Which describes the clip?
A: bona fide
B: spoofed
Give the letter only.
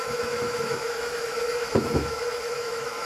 B